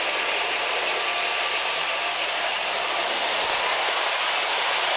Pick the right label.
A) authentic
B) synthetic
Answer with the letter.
A